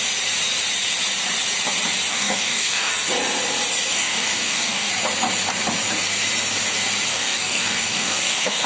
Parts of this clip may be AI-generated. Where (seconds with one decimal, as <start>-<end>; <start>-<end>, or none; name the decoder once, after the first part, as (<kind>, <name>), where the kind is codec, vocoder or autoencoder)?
2.1-2.9 (codec, DAC); 3.9-4.9; 7.1-8.7